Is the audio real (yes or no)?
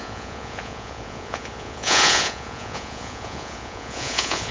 no